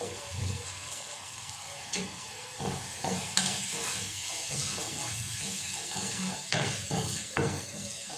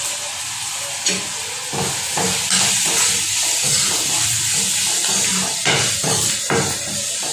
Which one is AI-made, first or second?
first